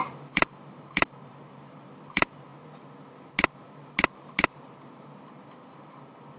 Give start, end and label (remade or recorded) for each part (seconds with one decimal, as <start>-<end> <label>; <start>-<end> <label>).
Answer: 0.0-2.5 remade; 2.5-5.3 recorded; 5.3-6.4 remade